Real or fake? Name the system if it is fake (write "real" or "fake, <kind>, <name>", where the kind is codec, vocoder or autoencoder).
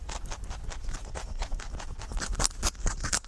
fake, vocoder, BigVGAN v2